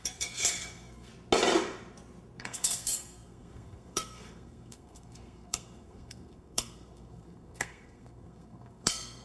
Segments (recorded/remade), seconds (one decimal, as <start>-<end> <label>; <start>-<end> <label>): 0.0-1.1 remade; 1.1-2.4 recorded; 2.4-9.2 remade